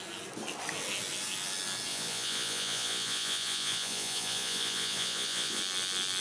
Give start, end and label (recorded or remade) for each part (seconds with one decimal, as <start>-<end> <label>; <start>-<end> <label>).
0.0-1.9 recorded; 1.9-5.6 remade; 5.6-6.2 recorded